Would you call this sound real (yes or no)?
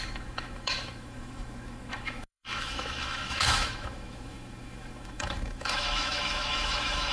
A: no